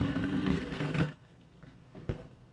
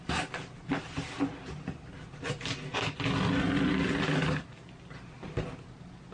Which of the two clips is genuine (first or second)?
second